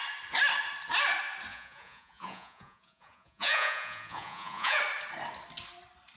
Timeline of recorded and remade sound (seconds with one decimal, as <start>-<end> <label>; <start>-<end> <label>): 0.0-1.5 recorded; 1.5-4.8 remade; 4.8-6.2 recorded